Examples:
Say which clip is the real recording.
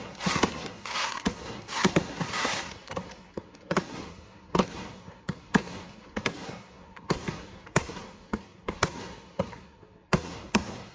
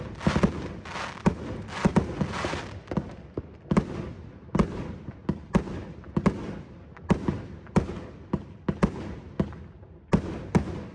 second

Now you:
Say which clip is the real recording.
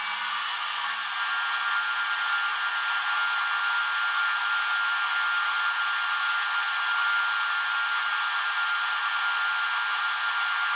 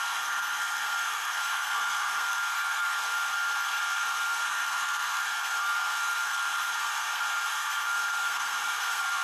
first